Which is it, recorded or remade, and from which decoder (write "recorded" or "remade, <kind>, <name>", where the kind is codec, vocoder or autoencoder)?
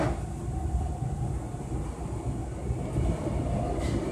recorded